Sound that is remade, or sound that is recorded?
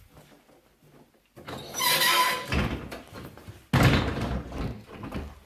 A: recorded